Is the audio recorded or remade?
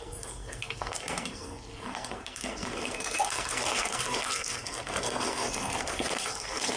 remade